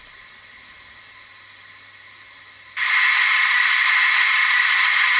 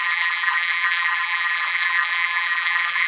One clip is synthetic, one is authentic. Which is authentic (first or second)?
first